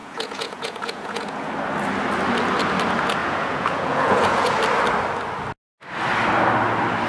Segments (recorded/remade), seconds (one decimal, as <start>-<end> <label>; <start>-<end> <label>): 0.0-1.5 remade; 1.5-3.2 recorded; 3.2-4.5 remade; 4.5-7.1 recorded